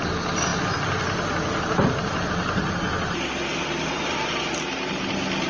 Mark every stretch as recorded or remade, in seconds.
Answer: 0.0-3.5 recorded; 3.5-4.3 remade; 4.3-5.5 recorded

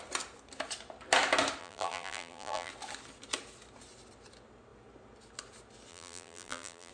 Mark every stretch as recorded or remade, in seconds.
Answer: 0.0-1.6 recorded; 1.6-2.7 remade; 2.7-5.9 recorded; 5.9-6.9 remade

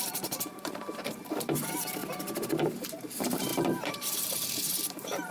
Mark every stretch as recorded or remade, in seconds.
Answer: 0.0-2.0 remade; 2.0-2.6 recorded; 2.6-5.3 remade

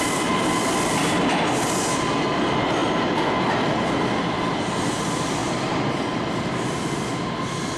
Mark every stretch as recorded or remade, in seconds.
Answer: 0.0-5.4 recorded; 5.4-6.5 remade; 6.5-7.8 recorded

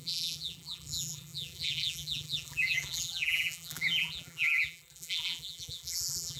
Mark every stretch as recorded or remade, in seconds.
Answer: 0.0-6.4 remade

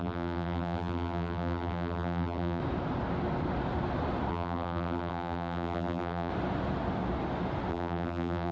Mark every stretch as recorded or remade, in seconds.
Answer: 0.0-2.6 remade; 2.6-4.3 recorded; 4.3-6.3 remade; 6.3-7.7 recorded; 7.7-8.5 remade